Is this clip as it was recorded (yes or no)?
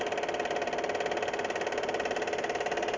yes